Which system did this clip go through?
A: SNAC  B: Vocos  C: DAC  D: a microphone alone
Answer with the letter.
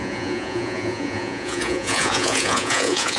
B